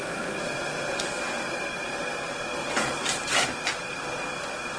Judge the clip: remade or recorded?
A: recorded